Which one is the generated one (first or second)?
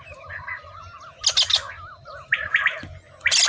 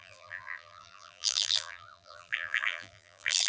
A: second